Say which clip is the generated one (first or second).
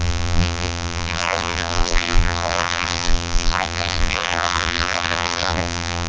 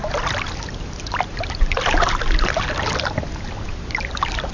first